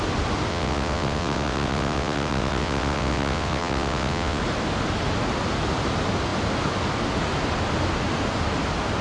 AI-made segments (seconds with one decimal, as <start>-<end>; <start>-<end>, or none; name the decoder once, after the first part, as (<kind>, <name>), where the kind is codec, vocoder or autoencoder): 0.5-4.4 (vocoder, WaveNeXt)

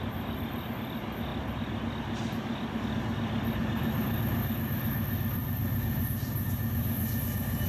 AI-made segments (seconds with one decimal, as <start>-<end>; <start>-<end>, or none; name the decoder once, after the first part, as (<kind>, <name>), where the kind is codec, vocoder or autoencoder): 3.6-4.8 (vocoder, BigVGAN v2); 5.4-7.1

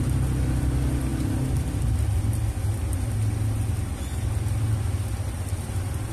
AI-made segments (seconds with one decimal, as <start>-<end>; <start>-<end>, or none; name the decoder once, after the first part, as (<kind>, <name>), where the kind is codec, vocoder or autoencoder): none

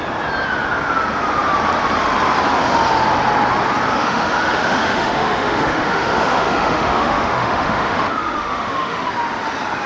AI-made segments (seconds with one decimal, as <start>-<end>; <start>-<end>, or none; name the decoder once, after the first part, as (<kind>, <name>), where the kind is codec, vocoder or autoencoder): 3.9-9.1 (autoencoder, DAC-VAE)

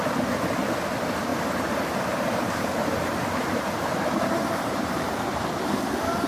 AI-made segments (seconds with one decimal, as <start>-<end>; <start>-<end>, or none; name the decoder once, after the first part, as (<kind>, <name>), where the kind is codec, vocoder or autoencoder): 1.3-5.1 (vocoder, BigVGAN v2)

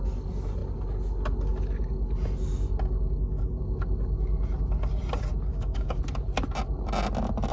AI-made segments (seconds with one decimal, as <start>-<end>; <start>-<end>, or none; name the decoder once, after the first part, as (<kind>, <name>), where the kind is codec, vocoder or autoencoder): 5.5-6.0 (codec, DAC)

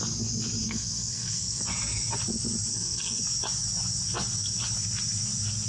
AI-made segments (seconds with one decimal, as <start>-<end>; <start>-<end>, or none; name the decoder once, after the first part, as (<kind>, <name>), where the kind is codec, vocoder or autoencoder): 0.6-1.6 (codec, SNAC); 2.7-3.2

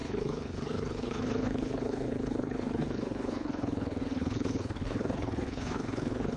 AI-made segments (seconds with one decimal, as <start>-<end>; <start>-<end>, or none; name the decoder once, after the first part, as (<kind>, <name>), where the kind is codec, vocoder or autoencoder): 0.0-6.4 (codec, HILCodec)